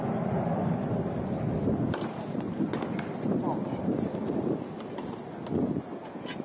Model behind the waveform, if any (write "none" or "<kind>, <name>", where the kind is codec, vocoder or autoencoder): none